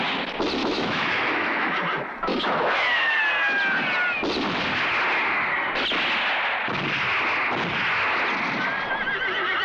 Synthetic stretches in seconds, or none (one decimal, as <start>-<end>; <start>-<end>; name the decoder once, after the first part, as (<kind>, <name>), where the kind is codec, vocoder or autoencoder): 0.6-1.7 (autoencoder, DAC-VAE); 2.3-3.2